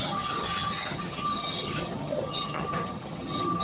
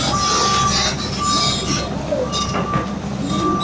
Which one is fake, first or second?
first